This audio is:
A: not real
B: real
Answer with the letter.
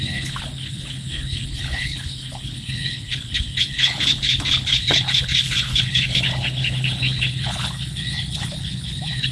A